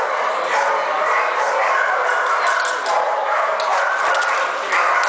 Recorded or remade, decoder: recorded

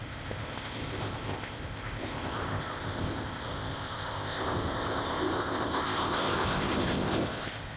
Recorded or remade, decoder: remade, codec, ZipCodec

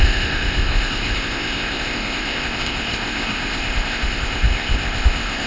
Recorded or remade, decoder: remade, codec, ZipCodec